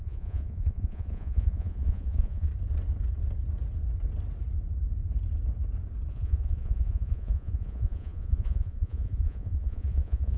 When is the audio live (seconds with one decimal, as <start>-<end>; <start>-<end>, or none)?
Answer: 2.5-6.1